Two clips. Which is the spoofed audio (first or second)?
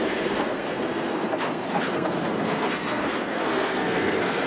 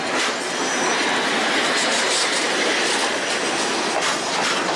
first